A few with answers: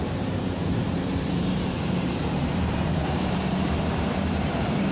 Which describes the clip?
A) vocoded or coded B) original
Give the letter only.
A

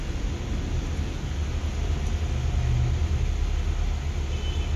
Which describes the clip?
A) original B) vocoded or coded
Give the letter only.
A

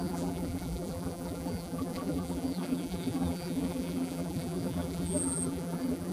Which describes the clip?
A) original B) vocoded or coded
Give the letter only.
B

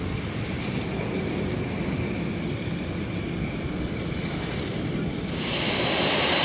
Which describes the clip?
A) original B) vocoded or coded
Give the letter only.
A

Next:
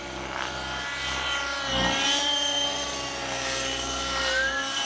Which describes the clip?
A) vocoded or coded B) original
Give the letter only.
B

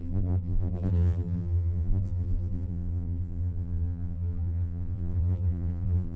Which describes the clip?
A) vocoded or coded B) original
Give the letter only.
A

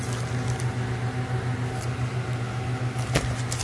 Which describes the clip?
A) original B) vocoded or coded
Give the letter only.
A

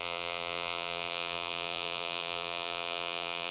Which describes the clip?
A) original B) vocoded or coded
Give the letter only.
B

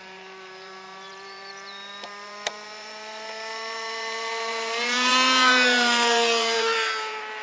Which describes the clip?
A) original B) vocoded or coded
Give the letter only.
B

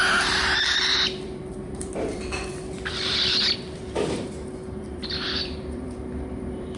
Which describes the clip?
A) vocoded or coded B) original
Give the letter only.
A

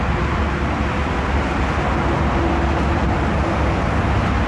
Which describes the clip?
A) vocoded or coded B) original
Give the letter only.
B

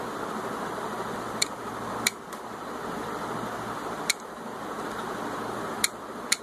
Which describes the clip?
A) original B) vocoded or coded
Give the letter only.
B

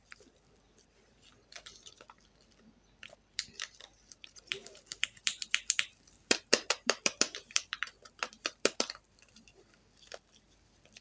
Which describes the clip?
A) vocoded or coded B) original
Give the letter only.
A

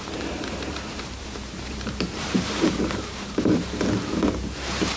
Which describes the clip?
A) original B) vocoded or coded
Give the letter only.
B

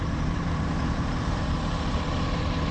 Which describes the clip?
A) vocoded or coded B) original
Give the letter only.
A